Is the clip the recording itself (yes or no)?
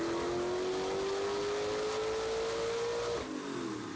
yes